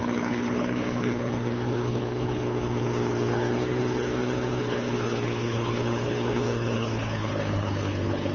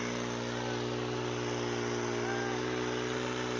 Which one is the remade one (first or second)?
first